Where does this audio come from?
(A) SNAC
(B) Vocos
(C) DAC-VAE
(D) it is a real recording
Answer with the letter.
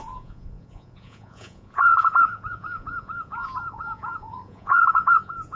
B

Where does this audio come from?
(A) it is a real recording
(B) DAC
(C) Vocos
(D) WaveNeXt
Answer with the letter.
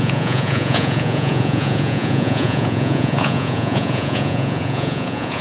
C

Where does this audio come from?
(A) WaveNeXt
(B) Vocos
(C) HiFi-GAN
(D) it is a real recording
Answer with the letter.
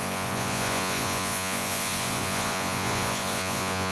B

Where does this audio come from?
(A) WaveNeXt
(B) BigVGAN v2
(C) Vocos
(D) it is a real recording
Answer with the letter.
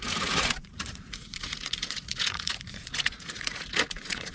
C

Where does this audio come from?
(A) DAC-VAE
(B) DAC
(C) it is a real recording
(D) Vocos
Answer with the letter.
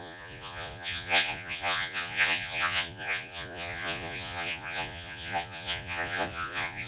D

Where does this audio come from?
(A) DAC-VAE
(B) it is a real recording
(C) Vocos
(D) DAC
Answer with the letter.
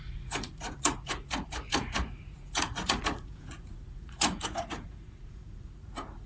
C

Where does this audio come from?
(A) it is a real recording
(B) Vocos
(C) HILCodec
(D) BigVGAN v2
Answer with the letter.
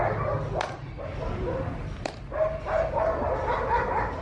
A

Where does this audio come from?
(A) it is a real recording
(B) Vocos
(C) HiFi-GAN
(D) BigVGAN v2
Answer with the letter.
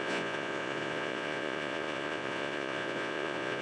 B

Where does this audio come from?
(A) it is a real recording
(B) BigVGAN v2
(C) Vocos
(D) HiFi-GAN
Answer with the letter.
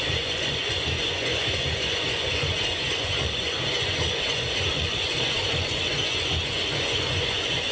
C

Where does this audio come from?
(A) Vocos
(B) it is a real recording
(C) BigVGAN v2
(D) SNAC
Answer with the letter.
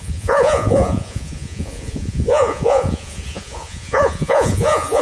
A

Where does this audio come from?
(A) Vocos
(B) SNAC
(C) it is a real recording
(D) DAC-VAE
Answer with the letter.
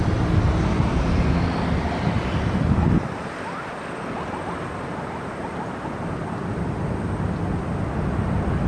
C